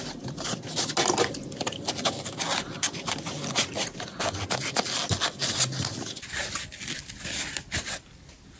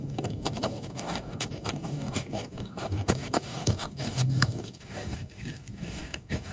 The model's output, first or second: second